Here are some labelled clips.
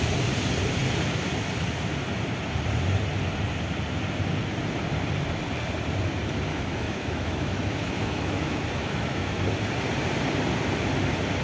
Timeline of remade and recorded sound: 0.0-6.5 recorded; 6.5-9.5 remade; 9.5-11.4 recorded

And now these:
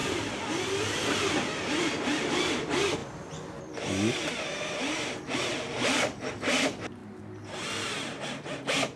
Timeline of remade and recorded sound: 0.0-0.6 recorded; 0.6-7.0 remade; 7.0-8.2 recorded; 8.2-9.0 remade

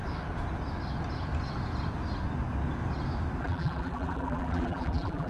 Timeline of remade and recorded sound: 0.0-3.4 recorded; 3.4-5.3 remade

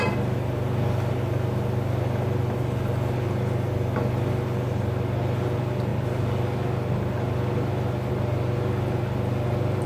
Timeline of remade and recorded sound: 0.0-9.9 recorded